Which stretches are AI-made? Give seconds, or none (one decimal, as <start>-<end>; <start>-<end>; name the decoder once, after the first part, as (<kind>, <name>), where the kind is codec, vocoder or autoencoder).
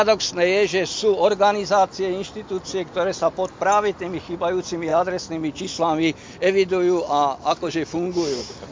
none